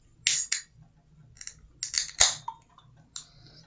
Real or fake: real